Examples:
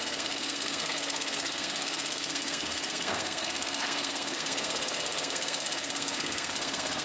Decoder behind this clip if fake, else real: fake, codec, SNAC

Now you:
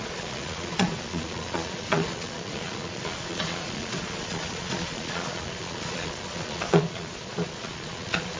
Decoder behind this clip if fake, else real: fake, vocoder, Vocos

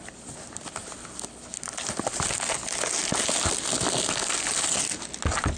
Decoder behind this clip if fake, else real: real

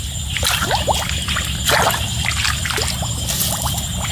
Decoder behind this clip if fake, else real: real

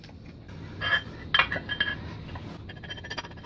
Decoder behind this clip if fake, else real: real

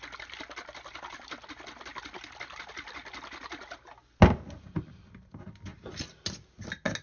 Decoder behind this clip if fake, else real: real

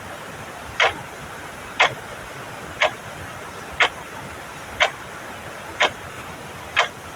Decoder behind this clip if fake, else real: real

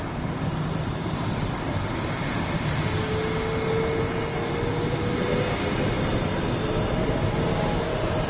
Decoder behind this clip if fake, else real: real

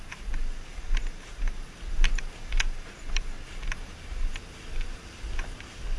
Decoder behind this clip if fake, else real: real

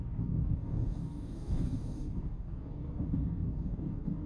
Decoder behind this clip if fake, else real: fake, codec, DAC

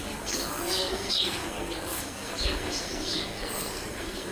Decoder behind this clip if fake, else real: fake, codec, SNAC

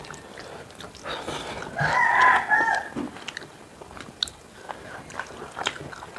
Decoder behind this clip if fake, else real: real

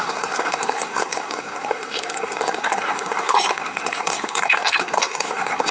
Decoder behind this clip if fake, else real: fake, codec, SNAC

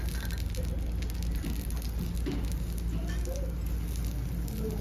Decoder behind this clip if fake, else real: real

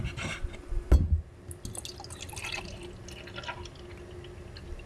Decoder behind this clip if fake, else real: real